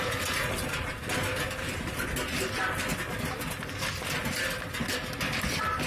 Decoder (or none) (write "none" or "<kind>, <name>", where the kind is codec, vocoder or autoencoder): none